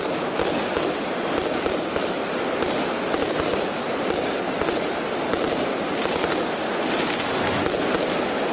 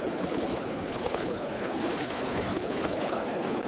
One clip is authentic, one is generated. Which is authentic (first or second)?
first